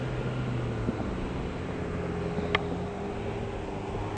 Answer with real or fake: real